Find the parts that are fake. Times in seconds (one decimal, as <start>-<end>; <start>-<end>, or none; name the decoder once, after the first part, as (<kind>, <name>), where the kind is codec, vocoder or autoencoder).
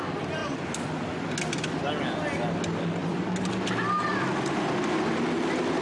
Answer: none